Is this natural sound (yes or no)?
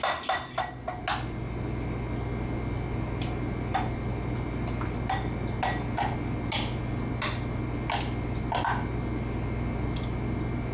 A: yes